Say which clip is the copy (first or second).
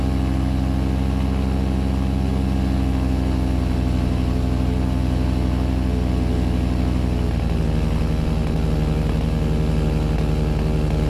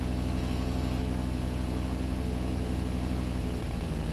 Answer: second